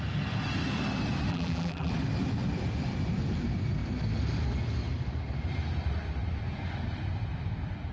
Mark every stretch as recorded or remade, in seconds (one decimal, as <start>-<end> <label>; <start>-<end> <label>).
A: 0.0-1.3 recorded; 1.3-1.9 remade; 1.9-7.9 recorded

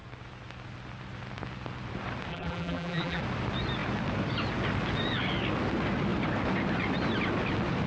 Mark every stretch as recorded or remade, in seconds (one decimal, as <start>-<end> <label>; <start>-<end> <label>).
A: 0.0-2.3 recorded; 2.3-3.2 remade; 3.2-7.9 recorded